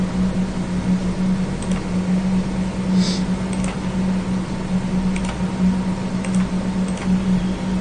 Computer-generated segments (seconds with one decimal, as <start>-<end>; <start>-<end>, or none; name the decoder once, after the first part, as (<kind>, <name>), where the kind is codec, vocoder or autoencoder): none